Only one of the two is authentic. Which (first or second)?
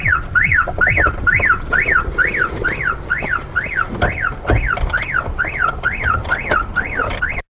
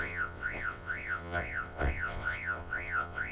first